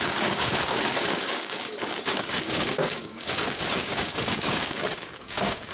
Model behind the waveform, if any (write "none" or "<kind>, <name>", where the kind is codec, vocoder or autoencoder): codec, DAC